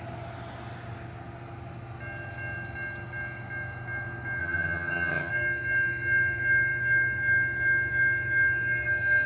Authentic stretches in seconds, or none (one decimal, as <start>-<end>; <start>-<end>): 0.0-4.4; 5.3-9.3